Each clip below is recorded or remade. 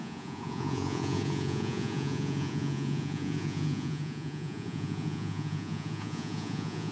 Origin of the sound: remade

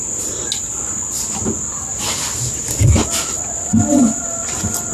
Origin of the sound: recorded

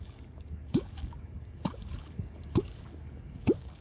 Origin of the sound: remade